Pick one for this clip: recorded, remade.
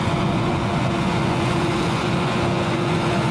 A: remade